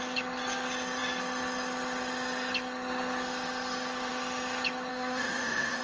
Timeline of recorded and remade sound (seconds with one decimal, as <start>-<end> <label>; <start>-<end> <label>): 0.0-4.9 recorded; 4.9-5.8 remade